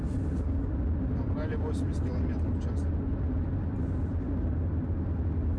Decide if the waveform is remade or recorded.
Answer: recorded